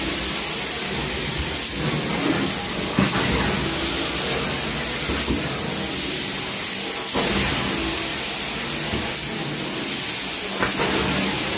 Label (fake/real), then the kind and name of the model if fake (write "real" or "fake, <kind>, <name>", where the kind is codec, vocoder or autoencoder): real